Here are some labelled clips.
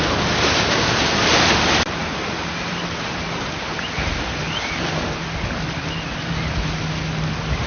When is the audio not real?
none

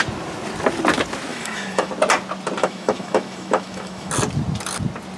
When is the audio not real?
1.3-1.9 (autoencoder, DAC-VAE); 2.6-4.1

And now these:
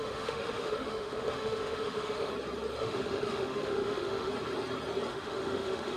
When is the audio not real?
0.0-2.3 (autoencoder, DAC-VAE); 2.8-4.3; 5.1-6.0

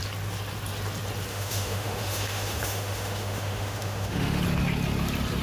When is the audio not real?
1.3-4.4 (autoencoder, DAC-VAE)

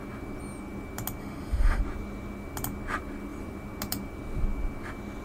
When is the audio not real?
1.2-1.8 (autoencoder, DAC-VAE)

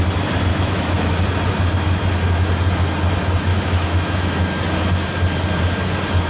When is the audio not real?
0.5-1.2 (autoencoder, DAC-VAE); 3.5-4.4

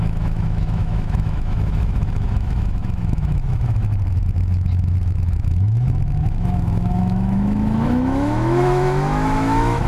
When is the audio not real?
0.0-9.9 (autoencoder, DAC-VAE)